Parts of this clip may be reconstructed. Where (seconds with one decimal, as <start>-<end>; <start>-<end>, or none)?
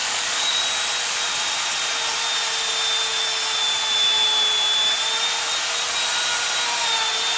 0.0-0.6